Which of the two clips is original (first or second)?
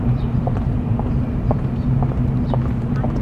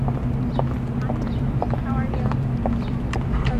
second